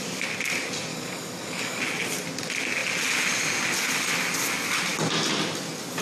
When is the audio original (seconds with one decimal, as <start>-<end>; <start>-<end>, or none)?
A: 0.0-0.9; 1.8-6.0